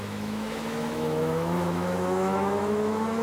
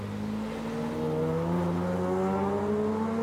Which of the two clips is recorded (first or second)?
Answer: second